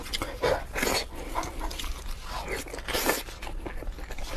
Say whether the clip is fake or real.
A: real